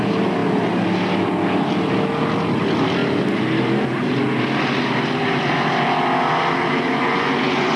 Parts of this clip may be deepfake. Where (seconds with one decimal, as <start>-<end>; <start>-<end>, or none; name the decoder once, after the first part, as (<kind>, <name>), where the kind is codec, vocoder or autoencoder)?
6.6-7.8 (vocoder, Vocos)